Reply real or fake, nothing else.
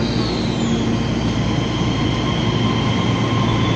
real